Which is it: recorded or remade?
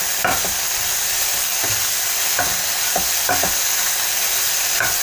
recorded